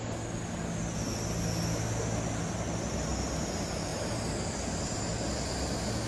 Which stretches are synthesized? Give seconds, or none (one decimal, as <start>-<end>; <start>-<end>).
none